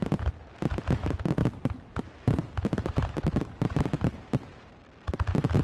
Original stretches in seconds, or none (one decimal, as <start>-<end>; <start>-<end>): 0.0-1.4; 4.8-5.6